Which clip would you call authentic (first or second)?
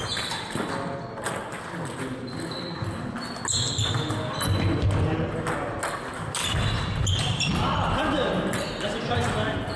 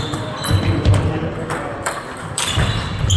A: first